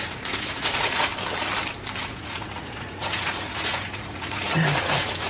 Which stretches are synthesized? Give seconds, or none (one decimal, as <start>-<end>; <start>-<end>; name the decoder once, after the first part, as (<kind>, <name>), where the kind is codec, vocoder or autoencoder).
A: 0.0-1.1 (vocoder, Vocos); 2.0-5.3